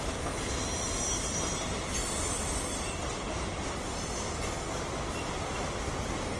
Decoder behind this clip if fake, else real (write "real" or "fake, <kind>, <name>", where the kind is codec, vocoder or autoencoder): real